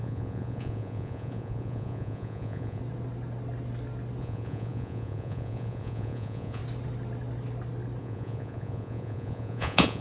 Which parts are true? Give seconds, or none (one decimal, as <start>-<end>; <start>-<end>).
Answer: 2.8-4.2; 6.6-8.0